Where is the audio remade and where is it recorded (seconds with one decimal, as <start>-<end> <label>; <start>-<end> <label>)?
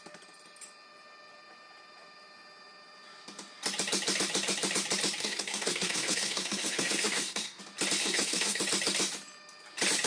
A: 0.0-5.2 recorded; 5.2-7.6 remade; 7.6-8.0 recorded; 8.0-8.6 remade; 8.6-10.1 recorded